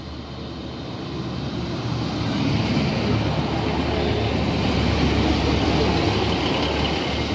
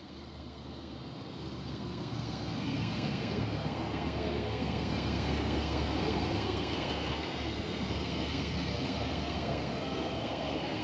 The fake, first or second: second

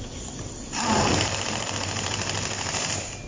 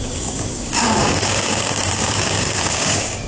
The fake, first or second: second